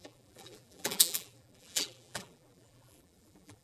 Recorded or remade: remade